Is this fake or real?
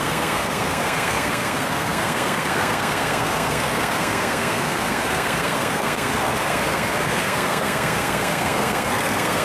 fake